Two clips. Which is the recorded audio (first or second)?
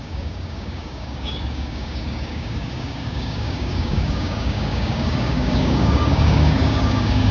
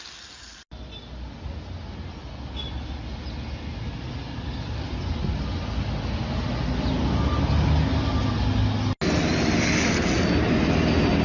second